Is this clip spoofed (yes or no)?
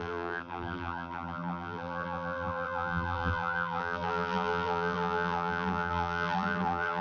yes